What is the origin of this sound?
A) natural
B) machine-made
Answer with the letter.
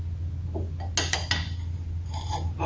A